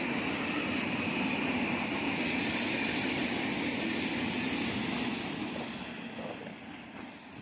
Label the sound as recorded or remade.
recorded